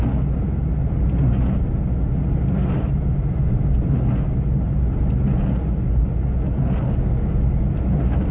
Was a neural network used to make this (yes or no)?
no